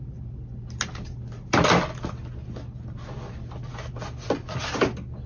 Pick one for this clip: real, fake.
real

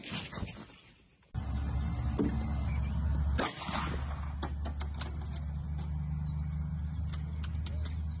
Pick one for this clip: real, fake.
real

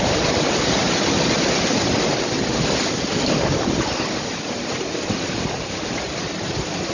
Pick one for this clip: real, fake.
real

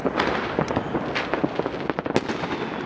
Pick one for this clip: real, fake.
real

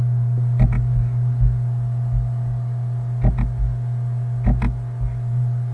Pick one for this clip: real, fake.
real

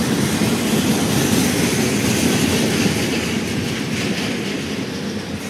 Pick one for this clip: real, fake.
real